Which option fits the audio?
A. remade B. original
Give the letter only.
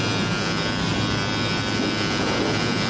B